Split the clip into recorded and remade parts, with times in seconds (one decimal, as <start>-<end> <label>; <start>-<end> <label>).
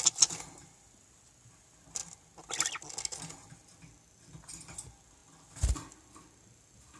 0.0-7.0 recorded